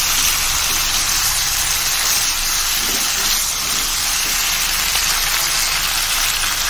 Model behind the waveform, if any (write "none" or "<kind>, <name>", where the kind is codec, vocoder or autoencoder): none